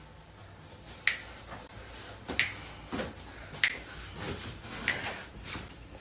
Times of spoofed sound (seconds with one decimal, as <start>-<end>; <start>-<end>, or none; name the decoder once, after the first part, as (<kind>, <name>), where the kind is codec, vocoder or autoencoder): none